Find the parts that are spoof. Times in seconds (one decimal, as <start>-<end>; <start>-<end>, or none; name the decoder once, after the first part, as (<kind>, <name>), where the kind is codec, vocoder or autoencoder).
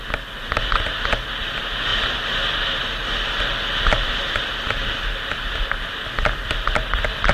none